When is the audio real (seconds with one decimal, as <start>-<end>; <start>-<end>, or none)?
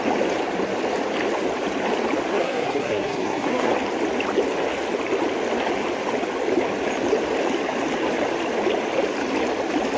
0.0-2.3; 3.7-10.0